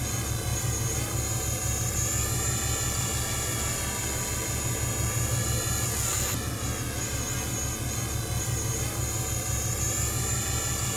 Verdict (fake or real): real